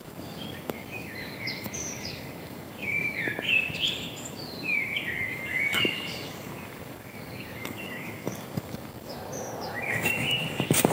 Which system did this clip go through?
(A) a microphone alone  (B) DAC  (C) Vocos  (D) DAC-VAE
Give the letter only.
B